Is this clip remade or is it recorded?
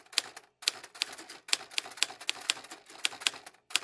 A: recorded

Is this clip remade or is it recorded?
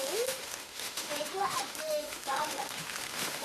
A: remade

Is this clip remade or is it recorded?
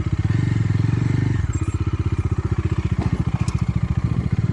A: recorded